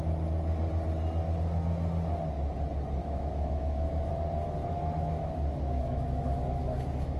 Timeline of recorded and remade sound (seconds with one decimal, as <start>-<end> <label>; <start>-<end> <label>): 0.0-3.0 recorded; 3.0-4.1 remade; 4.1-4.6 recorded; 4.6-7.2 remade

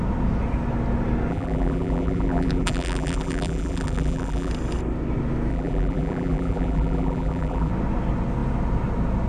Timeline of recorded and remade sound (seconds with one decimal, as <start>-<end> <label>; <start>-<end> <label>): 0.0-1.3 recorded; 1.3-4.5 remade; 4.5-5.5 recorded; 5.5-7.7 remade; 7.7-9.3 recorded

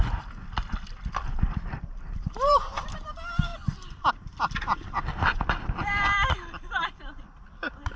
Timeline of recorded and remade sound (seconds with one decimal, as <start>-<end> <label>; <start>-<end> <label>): 0.0-1.0 recorded; 1.0-8.0 remade

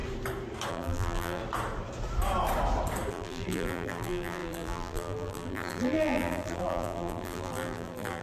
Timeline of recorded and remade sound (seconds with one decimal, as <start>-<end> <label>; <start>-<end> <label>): 0.0-0.7 recorded; 0.7-1.4 remade; 1.4-3.1 recorded; 3.1-8.2 remade

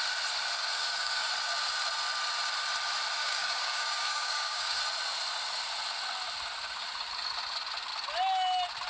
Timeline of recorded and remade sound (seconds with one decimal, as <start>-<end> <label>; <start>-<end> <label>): 0.0-0.6 recorded; 0.6-1.3 remade; 1.3-3.2 recorded; 3.2-4.8 remade; 4.8-8.9 recorded

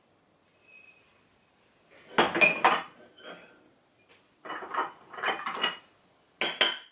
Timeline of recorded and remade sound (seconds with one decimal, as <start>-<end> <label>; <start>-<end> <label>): 0.0-6.9 recorded